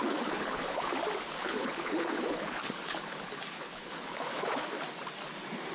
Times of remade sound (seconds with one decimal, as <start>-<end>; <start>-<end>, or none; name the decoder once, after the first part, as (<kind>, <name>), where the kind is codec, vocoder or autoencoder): 0.0-0.9 (codec, HILCodec); 1.4-4.6